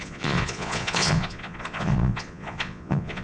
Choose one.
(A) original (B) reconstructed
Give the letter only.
B